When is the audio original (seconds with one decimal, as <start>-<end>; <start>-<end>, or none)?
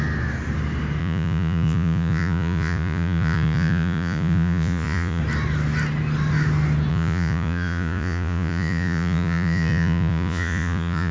0.0-1.0; 5.2-6.9